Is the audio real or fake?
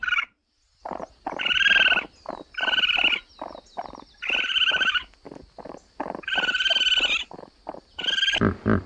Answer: real